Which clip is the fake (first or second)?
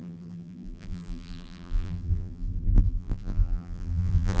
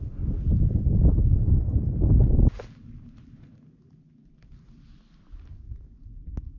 first